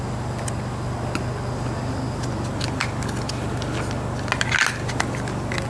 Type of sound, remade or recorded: recorded